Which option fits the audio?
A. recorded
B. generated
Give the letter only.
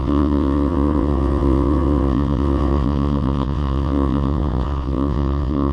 B